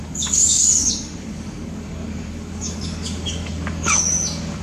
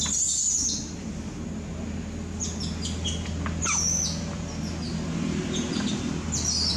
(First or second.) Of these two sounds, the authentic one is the second